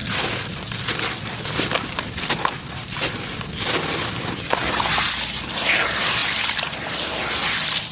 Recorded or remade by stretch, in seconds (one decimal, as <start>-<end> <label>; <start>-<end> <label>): 0.0-7.9 recorded